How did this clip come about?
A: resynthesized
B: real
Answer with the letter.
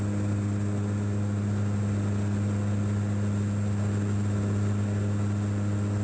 B